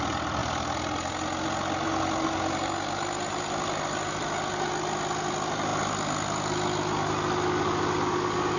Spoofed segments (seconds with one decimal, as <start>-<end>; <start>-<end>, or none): none